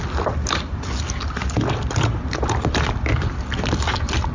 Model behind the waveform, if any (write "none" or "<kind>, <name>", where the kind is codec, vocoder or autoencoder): none